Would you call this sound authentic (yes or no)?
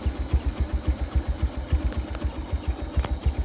yes